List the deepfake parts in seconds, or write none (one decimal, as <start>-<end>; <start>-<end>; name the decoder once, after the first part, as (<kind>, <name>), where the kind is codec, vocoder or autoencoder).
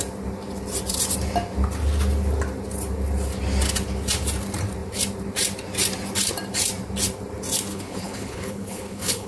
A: 7.7-9.3 (codec, HILCodec)